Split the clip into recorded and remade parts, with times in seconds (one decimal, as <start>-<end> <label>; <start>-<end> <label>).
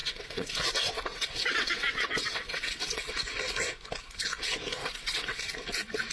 0.0-0.5 remade; 0.5-1.1 recorded; 1.1-3.1 remade; 3.1-4.8 recorded; 4.8-5.4 remade; 5.4-6.1 recorded